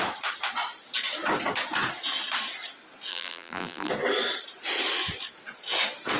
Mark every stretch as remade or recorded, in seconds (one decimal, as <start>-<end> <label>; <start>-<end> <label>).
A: 0.0-3.1 recorded; 3.1-3.9 remade; 3.9-6.2 recorded